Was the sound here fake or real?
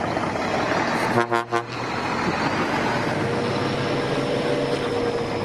real